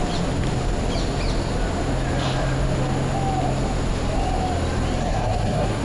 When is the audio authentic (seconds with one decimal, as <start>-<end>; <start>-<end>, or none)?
0.0-5.0